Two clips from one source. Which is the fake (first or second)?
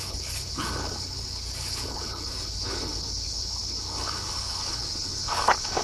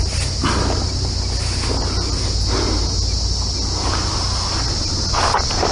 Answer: first